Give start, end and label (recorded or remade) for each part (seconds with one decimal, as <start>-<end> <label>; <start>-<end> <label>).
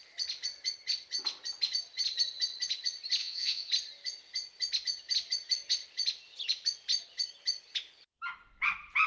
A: 0.0-3.2 recorded; 3.2-3.7 remade; 3.7-9.1 recorded